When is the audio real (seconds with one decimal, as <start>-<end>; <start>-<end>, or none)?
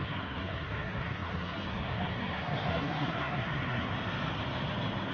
3.9-5.1